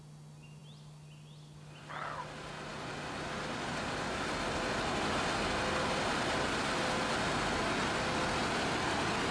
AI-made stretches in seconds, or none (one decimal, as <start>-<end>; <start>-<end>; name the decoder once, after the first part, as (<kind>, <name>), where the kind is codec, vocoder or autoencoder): none